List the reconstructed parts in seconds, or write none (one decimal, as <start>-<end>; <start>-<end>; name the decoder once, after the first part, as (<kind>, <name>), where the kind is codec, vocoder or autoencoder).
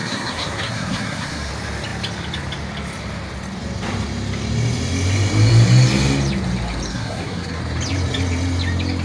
0.0-1.5 (codec, SNAC); 6.9-7.6